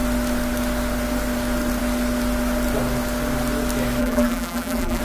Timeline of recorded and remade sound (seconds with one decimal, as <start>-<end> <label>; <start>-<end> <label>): 0.0-4.0 recorded; 4.0-5.0 remade